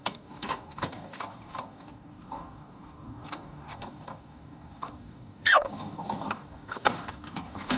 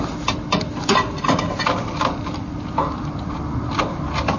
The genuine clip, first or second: second